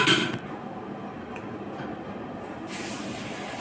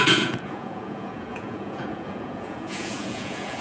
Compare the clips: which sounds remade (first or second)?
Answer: second